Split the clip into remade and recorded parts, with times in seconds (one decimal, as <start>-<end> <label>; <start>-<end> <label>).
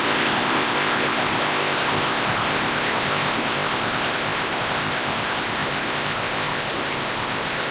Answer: 0.0-7.7 remade